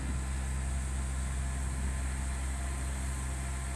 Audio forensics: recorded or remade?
recorded